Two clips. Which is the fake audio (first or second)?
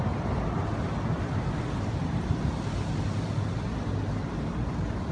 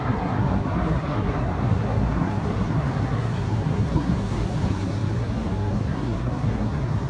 second